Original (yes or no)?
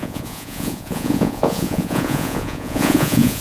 no